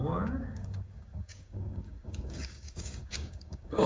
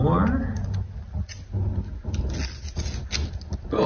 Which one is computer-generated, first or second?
first